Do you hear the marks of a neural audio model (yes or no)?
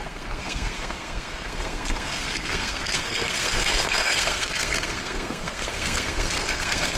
yes